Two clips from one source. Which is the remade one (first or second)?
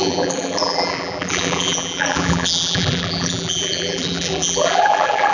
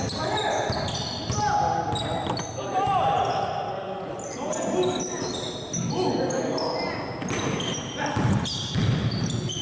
first